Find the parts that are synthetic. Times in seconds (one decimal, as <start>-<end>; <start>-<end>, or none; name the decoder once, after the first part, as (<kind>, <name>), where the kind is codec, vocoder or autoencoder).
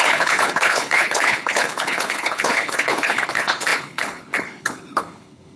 0.0-5.6 (codec, HILCodec)